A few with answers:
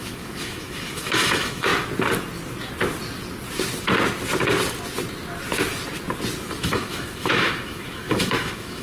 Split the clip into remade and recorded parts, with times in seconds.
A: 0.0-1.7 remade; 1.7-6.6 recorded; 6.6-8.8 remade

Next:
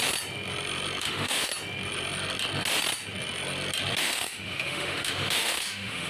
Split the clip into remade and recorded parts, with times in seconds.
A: 0.0-1.0 recorded; 1.0-1.5 remade; 1.5-4.0 recorded; 4.0-6.1 remade

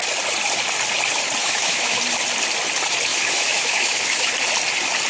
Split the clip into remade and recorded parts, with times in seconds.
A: 0.0-1.4 recorded; 1.4-2.0 remade; 2.0-3.1 recorded; 3.1-4.3 remade; 4.3-5.1 recorded

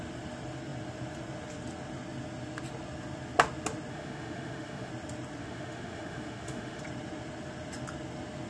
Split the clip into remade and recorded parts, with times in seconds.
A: 0.0-3.9 recorded; 3.9-4.9 remade; 4.9-5.4 recorded; 5.4-6.8 remade; 6.8-8.5 recorded

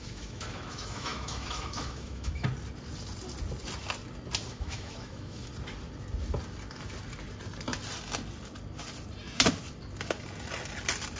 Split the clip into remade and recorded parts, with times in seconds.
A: 0.0-2.5 remade; 2.5-4.5 recorded; 4.5-5.5 remade; 5.5-11.2 recorded

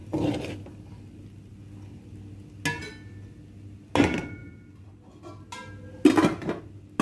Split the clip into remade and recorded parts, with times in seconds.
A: 0.0-7.0 recorded

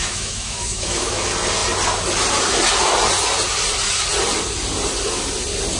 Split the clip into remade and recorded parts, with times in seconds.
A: 0.0-1.2 remade; 1.2-5.8 recorded